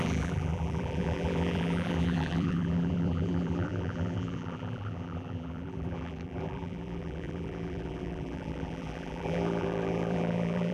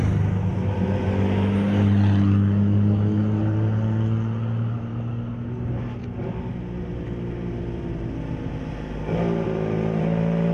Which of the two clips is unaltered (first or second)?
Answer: second